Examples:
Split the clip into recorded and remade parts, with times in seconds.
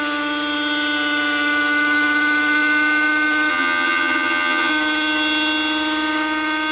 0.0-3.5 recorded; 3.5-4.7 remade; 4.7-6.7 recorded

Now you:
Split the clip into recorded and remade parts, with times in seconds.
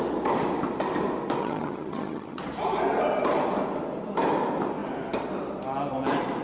0.0-1.4 recorded; 1.4-2.4 remade; 2.4-6.4 recorded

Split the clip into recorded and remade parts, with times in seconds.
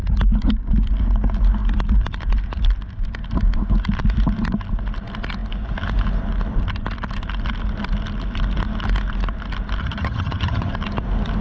0.0-9.8 recorded; 9.8-10.7 remade; 10.7-11.4 recorded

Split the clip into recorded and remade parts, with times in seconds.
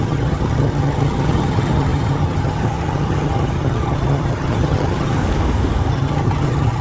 0.0-5.2 remade; 5.2-5.9 recorded; 5.9-6.8 remade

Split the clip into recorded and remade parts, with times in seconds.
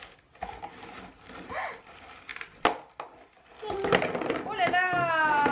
0.0-5.5 recorded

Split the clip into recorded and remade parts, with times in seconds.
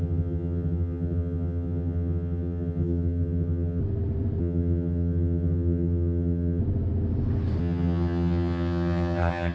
0.0-3.8 remade; 3.8-4.4 recorded; 4.4-6.6 remade; 6.6-7.6 recorded; 7.6-9.5 remade